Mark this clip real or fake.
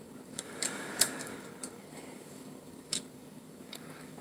fake